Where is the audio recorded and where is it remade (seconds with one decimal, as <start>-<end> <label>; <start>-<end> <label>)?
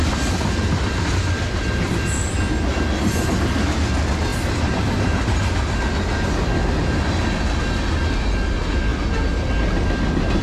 0.0-4.3 recorded; 4.3-5.8 remade; 5.8-10.4 recorded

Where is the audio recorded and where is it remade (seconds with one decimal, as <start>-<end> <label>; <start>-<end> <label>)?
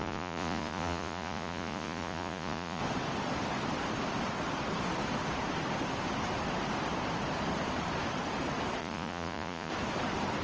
0.0-2.8 remade; 2.8-8.8 recorded; 8.8-9.7 remade; 9.7-10.4 recorded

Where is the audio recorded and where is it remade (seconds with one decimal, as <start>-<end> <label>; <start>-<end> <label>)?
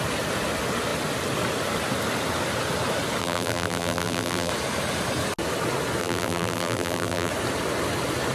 0.0-3.2 recorded; 3.2-4.5 remade; 4.5-6.0 recorded; 6.0-7.3 remade; 7.3-8.3 recorded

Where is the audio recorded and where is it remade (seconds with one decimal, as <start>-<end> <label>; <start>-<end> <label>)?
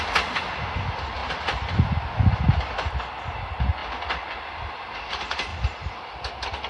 0.0-6.7 recorded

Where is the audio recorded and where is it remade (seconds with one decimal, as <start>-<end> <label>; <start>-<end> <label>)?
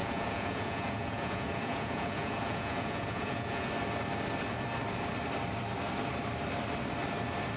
0.0-3.7 remade; 3.7-7.6 recorded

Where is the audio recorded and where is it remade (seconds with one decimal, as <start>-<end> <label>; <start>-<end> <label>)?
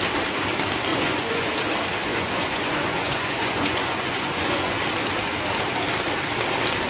0.0-0.9 recorded; 0.9-1.5 remade; 1.5-2.1 recorded; 2.1-4.8 remade; 4.8-6.9 recorded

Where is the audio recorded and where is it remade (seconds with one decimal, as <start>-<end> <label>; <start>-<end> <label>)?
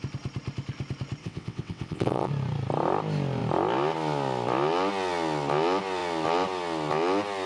0.0-1.2 recorded; 1.2-2.3 remade; 2.3-7.5 recorded